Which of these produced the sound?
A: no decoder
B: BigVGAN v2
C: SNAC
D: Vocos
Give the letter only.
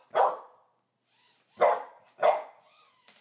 A